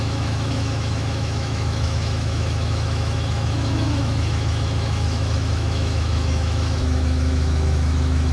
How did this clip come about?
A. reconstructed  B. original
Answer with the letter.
A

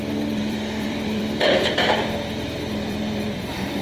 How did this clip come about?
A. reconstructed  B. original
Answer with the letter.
A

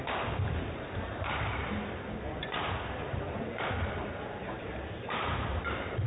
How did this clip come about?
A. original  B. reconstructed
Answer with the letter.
B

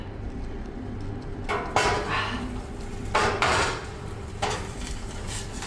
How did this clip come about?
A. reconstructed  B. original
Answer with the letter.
A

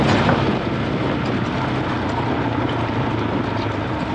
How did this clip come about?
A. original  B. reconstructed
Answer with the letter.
A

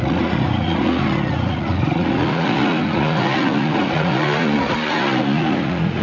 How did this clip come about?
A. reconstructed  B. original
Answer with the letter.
A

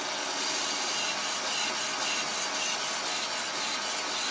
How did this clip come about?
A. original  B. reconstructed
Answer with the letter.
A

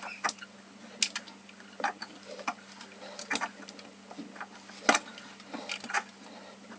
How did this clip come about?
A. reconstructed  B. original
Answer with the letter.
B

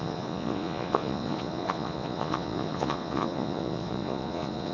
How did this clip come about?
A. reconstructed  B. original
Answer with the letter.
A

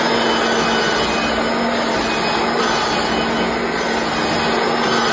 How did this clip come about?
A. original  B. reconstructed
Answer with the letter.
A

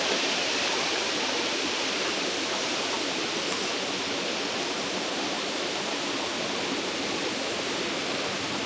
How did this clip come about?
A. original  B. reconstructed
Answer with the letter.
A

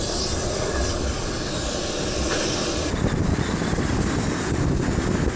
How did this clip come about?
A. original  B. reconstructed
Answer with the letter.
A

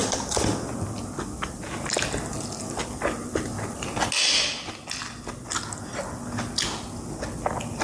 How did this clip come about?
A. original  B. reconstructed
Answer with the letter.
A